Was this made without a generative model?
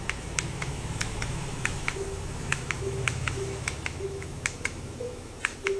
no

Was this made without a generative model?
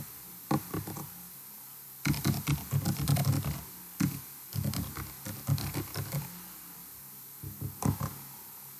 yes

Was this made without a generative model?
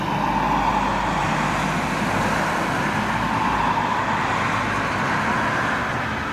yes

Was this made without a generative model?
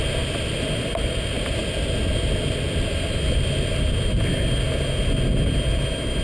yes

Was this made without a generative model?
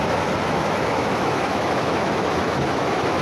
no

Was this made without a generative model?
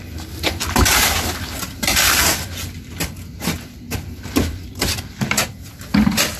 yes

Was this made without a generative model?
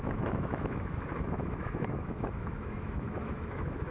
no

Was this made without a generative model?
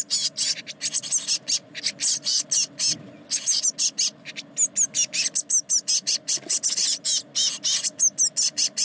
yes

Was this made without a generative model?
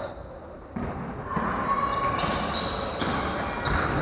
yes